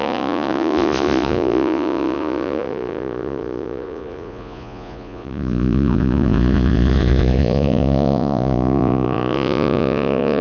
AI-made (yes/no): yes